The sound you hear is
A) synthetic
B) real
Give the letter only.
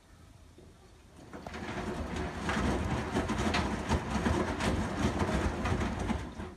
B